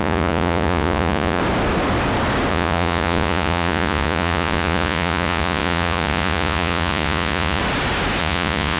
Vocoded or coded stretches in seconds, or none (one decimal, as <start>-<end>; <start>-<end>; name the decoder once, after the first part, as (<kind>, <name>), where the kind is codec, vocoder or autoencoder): 0.0-1.4 (vocoder, Vocos); 2.5-7.6; 8.2-8.8